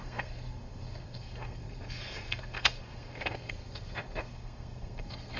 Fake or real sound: fake